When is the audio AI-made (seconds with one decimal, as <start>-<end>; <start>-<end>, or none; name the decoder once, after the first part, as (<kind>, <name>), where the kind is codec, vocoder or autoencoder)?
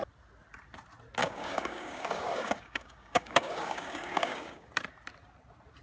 1.2-4.7 (codec, DAC)